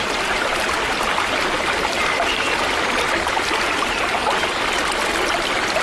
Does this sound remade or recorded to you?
recorded